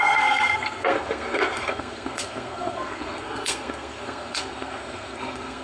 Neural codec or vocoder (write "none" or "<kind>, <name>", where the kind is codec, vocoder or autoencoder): codec, SNAC